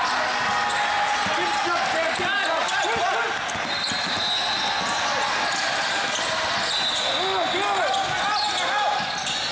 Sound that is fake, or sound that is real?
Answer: real